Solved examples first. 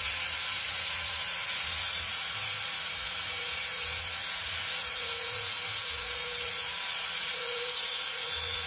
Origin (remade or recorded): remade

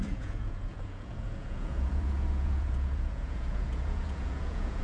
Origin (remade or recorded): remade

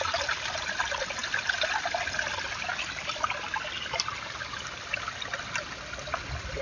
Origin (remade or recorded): recorded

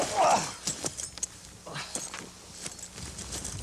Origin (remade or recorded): recorded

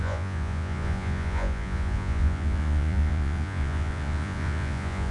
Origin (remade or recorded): remade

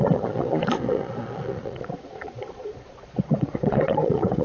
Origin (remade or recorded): remade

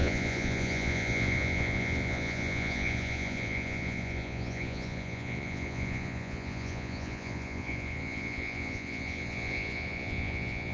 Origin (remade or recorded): remade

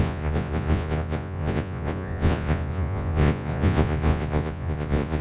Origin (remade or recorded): remade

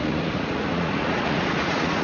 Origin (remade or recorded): remade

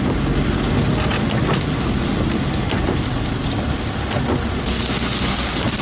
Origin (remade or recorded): recorded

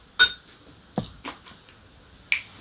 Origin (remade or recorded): recorded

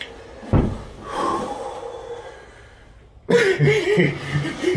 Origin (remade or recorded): recorded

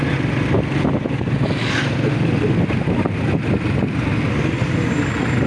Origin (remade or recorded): recorded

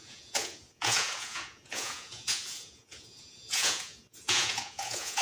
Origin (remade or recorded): remade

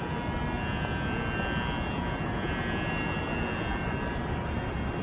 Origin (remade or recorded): recorded